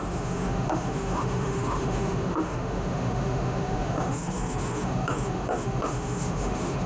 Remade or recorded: remade